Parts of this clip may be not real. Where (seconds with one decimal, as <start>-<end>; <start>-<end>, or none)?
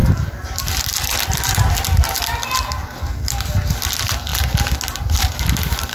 none